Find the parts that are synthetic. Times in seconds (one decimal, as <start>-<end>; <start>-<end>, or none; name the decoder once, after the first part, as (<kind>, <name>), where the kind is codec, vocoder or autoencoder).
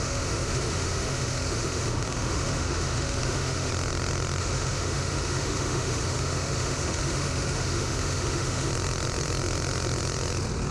0.0-3.7 (autoencoder, DAC-VAE); 4.4-8.7